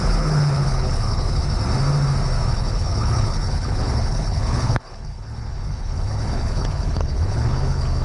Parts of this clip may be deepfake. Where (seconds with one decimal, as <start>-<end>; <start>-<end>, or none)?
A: 0.0-1.4; 2.5-8.0